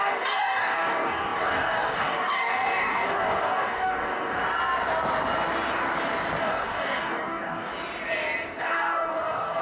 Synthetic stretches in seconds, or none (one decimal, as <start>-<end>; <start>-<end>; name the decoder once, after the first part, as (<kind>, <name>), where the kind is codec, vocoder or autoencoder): 0.0-4.4 (codec, DAC); 6.4-7.7; 8.6-9.6